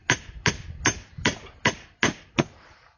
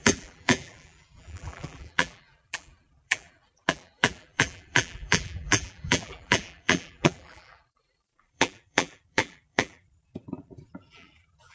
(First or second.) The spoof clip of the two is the second